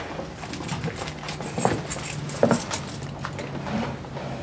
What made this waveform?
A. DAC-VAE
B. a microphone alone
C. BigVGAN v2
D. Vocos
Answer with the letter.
B